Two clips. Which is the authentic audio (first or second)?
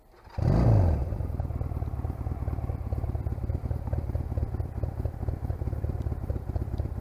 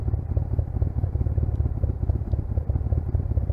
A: first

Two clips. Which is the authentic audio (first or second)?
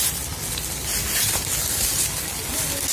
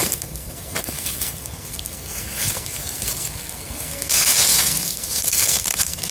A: first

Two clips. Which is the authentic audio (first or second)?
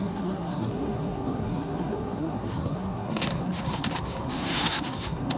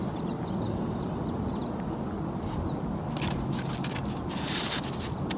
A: second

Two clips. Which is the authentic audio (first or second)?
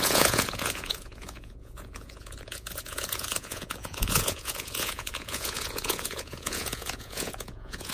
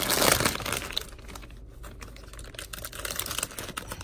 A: second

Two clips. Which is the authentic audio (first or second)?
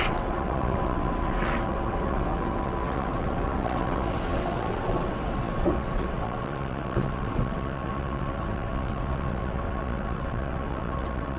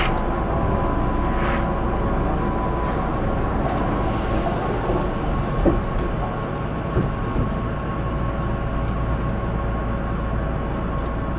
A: second